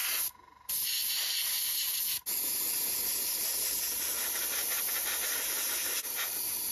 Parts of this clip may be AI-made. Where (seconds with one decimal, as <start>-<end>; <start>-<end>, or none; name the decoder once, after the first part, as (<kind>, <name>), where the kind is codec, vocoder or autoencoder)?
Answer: none